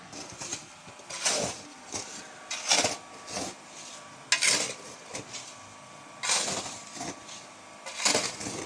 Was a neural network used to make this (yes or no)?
no